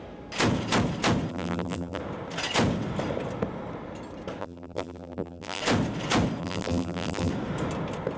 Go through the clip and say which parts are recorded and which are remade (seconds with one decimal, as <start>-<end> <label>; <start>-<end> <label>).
0.0-1.3 recorded; 1.3-2.0 remade; 2.0-4.4 recorded; 4.4-5.6 remade; 5.6-6.4 recorded; 6.4-7.3 remade; 7.3-8.2 recorded